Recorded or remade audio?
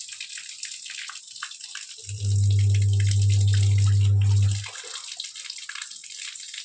recorded